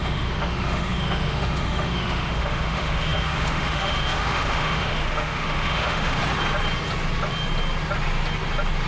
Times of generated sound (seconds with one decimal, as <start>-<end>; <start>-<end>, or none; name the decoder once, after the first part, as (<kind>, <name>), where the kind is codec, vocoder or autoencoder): 0.0-6.2 (autoencoder, DAC-VAE)